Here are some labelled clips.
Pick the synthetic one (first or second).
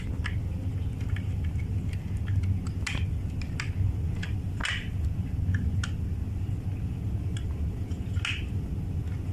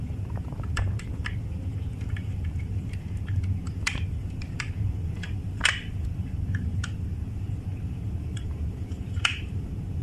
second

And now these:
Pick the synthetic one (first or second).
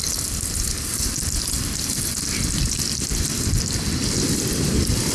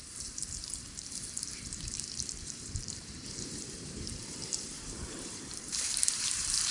second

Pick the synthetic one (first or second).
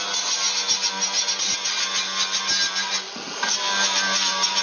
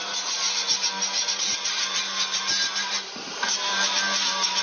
second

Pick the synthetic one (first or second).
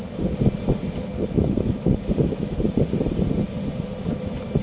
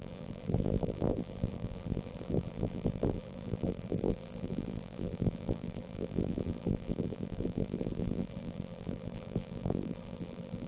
second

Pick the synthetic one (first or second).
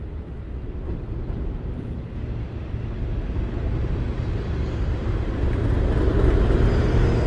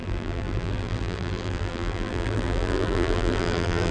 second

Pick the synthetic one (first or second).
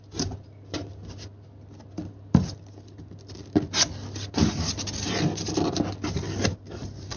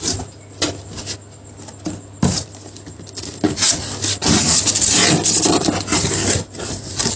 first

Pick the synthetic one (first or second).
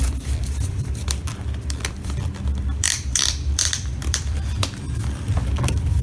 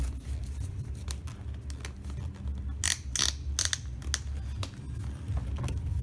first